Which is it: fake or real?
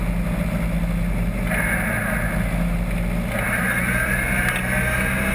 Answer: real